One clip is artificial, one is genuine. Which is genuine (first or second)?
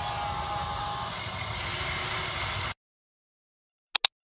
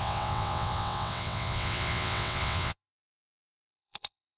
first